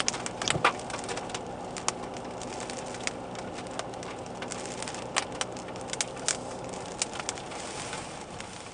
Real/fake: real